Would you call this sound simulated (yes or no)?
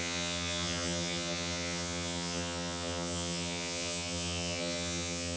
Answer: yes